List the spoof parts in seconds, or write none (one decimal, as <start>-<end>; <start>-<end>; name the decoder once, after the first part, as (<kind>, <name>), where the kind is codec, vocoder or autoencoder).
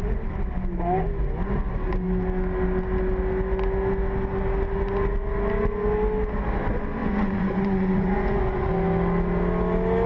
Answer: 7.0-8.7 (vocoder, Vocos)